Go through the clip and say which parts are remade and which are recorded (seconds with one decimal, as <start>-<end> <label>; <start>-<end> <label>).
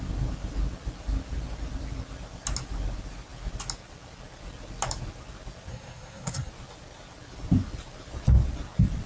0.0-5.7 recorded; 5.7-6.5 remade; 6.5-9.1 recorded